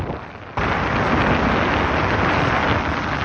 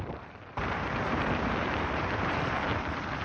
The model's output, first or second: second